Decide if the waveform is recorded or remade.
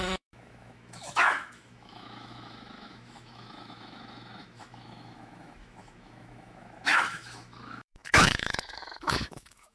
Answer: remade